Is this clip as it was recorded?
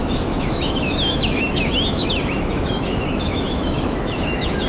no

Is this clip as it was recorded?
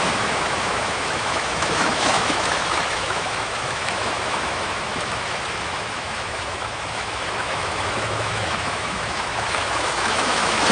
no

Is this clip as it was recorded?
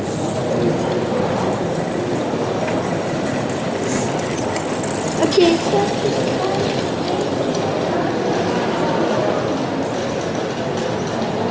yes